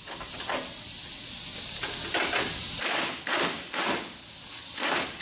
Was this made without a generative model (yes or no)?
yes